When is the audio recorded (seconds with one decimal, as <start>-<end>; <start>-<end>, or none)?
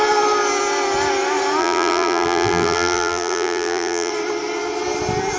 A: 0.0-1.6; 4.1-5.4